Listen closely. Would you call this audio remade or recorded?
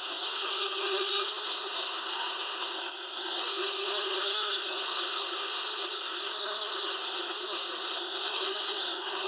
remade